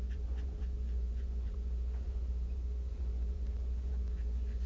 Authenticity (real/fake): fake